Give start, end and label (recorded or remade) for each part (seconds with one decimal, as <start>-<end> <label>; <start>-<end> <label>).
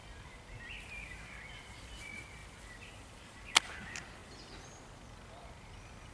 0.0-6.1 recorded